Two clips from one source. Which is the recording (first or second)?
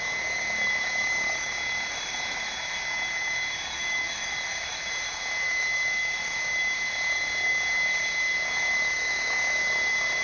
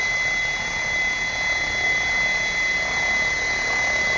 second